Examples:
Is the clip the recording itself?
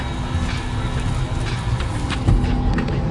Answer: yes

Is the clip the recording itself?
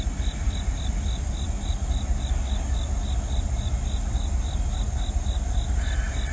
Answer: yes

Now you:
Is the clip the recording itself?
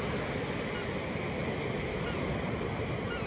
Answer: yes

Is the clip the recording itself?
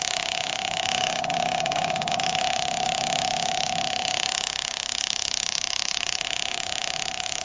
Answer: no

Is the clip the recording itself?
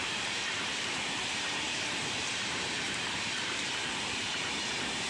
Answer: no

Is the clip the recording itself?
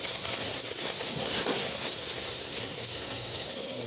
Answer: no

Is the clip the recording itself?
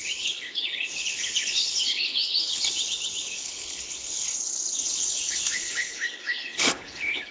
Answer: no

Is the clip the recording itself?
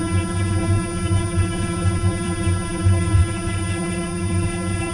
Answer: no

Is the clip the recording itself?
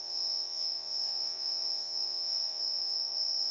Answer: no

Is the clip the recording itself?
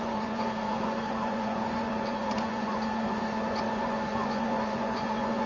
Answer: no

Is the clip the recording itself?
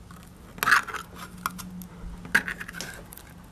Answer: yes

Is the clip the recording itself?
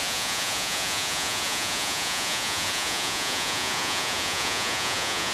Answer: no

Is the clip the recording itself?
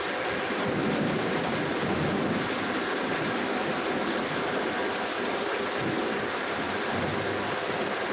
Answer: yes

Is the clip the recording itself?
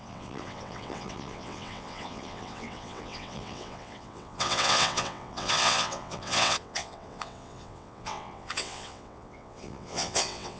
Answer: no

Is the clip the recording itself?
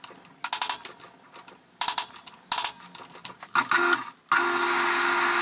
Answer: yes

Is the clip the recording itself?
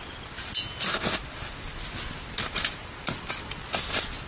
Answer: yes